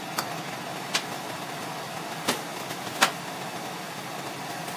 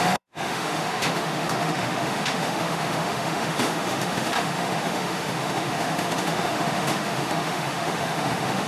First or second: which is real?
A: first